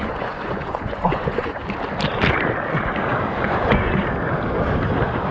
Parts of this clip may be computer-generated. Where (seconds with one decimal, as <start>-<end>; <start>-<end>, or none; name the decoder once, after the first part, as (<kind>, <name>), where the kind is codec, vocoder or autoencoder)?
0.0-1.6 (vocoder, Vocos); 3.3-4.0